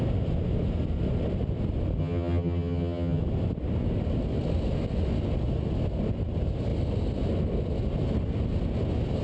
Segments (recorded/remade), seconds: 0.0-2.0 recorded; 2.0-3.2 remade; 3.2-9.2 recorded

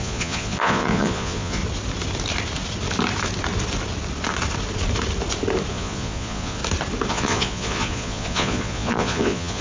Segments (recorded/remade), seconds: 0.0-1.6 remade; 1.6-5.7 recorded; 5.7-6.6 remade; 6.6-7.1 recorded; 7.1-9.6 remade

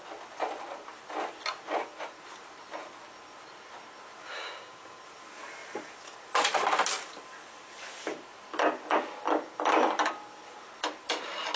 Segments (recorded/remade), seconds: 0.0-4.3 recorded; 4.3-5.0 remade; 5.0-11.6 recorded